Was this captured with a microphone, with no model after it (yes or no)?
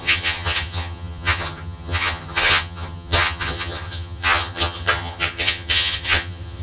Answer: no